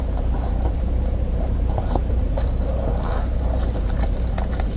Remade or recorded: remade